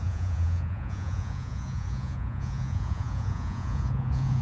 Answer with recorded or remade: remade